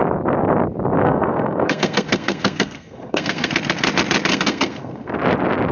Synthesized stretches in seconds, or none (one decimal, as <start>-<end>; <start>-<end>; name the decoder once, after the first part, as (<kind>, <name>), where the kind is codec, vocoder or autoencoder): 1.0-3.5 (codec, SNAC); 4.3-5.1